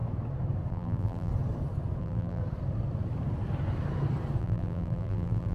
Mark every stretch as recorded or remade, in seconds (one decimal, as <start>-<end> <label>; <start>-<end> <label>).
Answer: 0.0-0.7 recorded; 0.7-1.3 remade; 1.3-2.0 recorded; 2.0-2.4 remade; 2.4-4.4 recorded; 4.4-5.5 remade